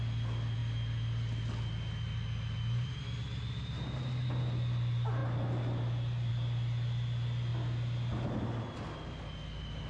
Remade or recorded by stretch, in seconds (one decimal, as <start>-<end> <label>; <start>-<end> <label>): 0.0-9.9 recorded